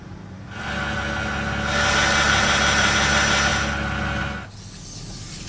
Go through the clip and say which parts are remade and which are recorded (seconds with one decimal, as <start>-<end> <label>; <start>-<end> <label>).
0.0-5.5 recorded